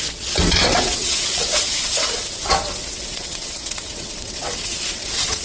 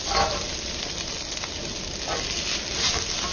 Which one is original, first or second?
second